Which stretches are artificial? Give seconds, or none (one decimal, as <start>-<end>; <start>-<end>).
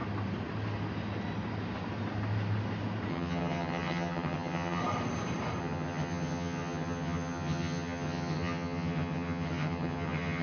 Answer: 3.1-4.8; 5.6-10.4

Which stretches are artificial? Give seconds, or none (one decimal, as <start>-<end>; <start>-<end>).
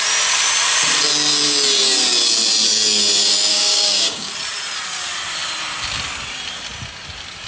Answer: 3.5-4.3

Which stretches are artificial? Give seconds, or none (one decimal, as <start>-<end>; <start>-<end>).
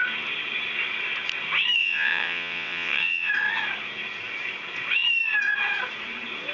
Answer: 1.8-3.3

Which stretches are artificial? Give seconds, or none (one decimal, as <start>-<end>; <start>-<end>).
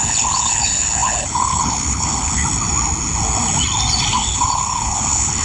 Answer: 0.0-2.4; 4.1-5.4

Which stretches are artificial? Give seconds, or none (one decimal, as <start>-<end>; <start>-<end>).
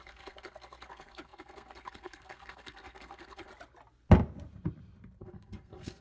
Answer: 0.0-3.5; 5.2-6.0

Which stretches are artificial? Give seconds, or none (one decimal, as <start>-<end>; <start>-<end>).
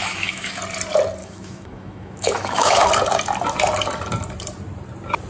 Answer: 0.0-0.6; 1.2-2.9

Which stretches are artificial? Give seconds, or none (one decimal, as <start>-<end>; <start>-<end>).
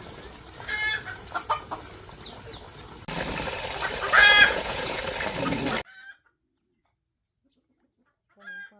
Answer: 4.2-5.0